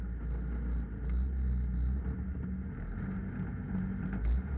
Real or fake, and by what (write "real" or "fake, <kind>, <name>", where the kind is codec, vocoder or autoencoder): real